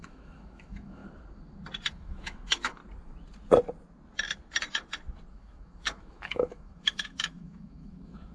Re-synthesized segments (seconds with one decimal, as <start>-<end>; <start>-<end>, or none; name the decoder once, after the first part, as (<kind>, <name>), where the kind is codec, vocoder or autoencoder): 0.0-1.0 (autoencoder, DAC-VAE); 1.9-2.8; 5.3-8.3